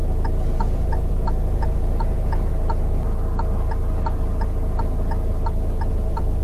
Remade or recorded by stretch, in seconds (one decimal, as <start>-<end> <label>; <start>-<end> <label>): 0.0-0.6 recorded; 0.6-2.5 remade; 2.5-5.9 recorded; 5.9-6.4 remade